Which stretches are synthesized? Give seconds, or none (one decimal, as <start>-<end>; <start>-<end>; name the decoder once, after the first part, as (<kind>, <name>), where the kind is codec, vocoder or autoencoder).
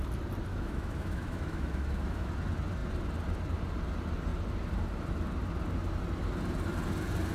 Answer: 0.5-2.3 (autoencoder, DAC-VAE)